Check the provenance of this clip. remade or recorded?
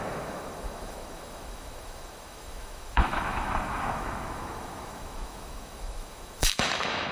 remade